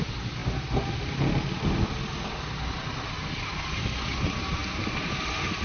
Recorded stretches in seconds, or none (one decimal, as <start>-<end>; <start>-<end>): 0.0-5.6